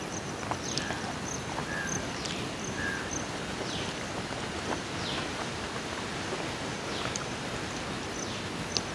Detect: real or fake real